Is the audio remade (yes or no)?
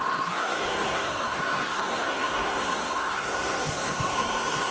yes